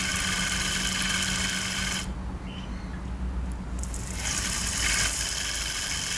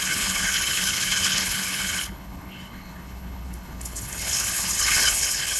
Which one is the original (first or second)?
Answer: first